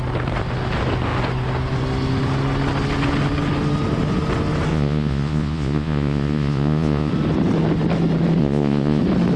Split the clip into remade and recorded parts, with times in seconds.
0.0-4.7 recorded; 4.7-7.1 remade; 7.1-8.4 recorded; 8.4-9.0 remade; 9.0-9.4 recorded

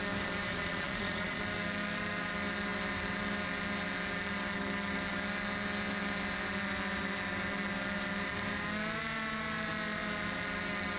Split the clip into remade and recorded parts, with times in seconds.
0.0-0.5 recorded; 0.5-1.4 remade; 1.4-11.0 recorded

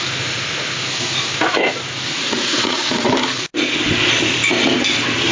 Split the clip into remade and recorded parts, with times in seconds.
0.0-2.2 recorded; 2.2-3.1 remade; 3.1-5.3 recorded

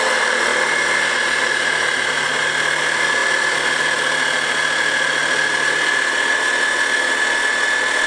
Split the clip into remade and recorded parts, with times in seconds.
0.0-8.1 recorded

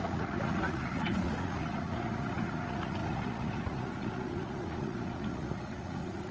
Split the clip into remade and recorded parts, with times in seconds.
0.0-6.3 remade

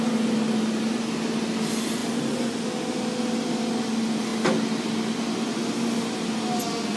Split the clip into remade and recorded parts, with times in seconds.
0.0-7.0 recorded

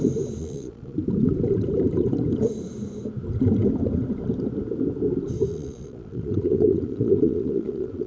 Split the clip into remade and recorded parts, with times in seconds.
0.0-0.4 recorded; 0.4-1.0 remade; 1.0-5.5 recorded; 5.5-8.1 remade